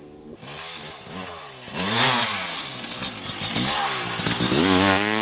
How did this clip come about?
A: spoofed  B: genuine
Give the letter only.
B